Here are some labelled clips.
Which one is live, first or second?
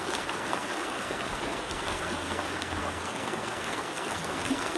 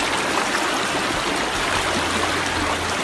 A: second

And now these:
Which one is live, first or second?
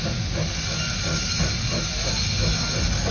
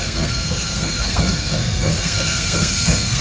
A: first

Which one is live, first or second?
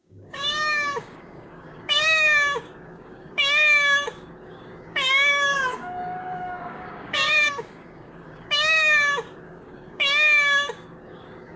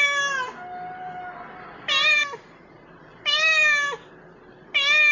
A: second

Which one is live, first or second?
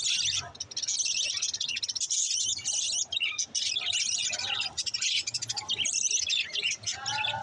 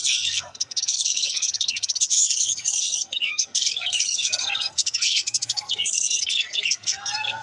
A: first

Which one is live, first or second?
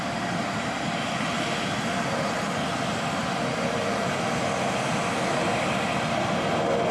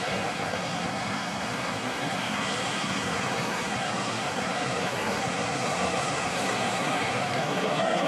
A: first